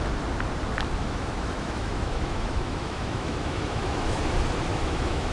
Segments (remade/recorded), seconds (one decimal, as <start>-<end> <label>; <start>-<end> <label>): 0.0-1.0 recorded; 1.0-4.2 remade; 4.2-4.7 recorded; 4.7-5.3 remade